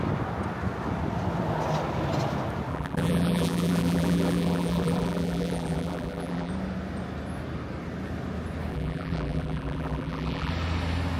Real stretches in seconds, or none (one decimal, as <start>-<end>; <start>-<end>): 0.0-2.7; 6.5-8.7; 10.5-11.2